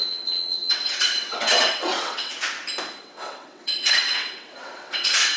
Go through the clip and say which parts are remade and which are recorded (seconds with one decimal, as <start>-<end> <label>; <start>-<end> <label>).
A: 0.0-2.3 remade; 2.3-3.0 recorded; 3.0-5.4 remade